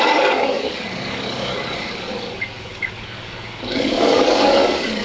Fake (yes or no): yes